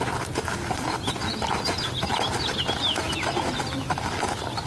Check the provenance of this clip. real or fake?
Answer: real